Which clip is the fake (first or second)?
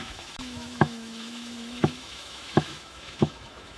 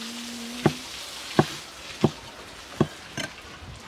first